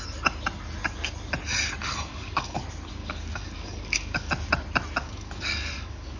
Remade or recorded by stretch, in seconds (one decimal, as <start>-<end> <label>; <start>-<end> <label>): 0.0-2.1 recorded; 2.1-2.6 remade; 2.6-3.0 recorded; 3.0-4.3 remade; 4.3-5.0 recorded; 5.0-6.2 remade